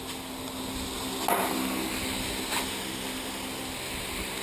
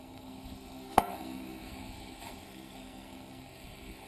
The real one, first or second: first